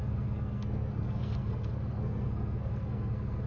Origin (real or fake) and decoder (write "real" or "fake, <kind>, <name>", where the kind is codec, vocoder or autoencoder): fake, codec, SNAC